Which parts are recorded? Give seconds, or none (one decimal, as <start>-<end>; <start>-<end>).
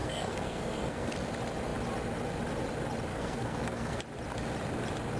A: 1.1-3.1; 4.0-5.2